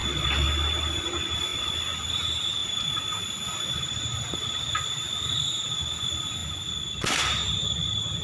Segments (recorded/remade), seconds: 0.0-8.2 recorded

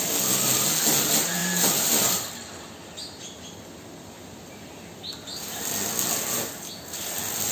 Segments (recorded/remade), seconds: 0.0-1.4 recorded; 1.4-2.3 remade; 2.3-7.5 recorded

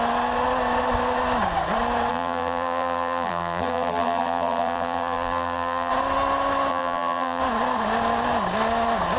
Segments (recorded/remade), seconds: 0.0-2.1 recorded; 2.1-5.9 remade; 5.9-6.7 recorded; 6.7-7.4 remade; 7.4-9.2 recorded

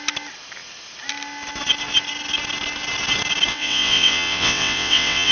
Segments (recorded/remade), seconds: 0.0-3.5 recorded; 3.5-5.3 remade

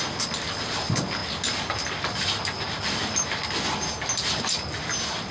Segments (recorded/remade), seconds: 0.0-5.3 recorded

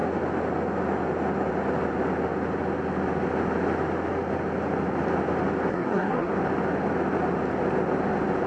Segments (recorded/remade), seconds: 0.0-5.7 recorded; 5.7-6.3 remade; 6.3-8.5 recorded

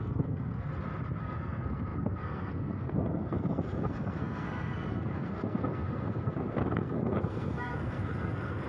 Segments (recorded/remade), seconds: 0.0-0.7 remade; 0.7-1.2 recorded; 1.2-8.7 remade